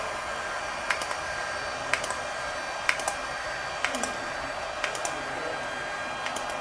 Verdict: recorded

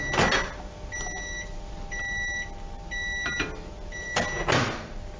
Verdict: recorded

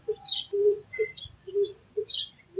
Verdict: remade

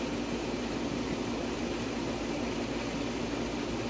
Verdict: recorded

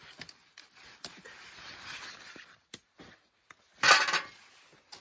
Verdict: recorded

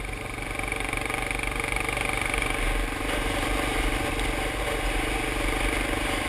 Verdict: recorded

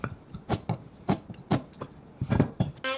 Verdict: recorded